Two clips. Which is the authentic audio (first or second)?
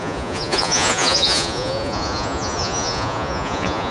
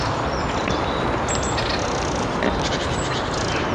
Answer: second